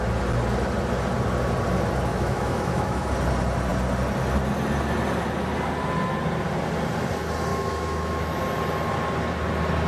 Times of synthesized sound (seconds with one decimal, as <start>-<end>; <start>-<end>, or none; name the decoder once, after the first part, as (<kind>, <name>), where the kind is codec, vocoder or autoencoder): 2.1-3.1 (autoencoder, DAC-VAE); 7.5-8.4